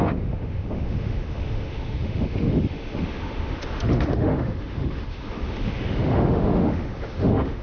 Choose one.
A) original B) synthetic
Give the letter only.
B